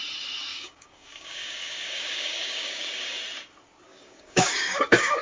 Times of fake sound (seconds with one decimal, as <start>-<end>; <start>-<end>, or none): 0.5-3.2; 3.9-5.2